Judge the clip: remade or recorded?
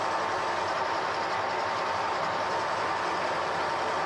recorded